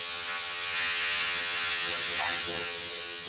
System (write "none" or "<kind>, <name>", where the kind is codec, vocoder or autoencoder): vocoder, HiFi-GAN